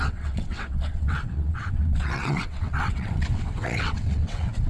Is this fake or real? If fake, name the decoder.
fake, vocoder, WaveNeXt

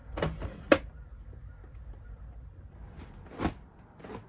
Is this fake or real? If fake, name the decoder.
real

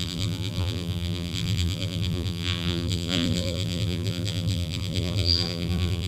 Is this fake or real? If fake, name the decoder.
fake, vocoder, BigVGAN v2